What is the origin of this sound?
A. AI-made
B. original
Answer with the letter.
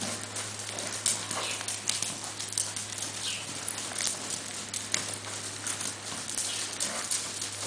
B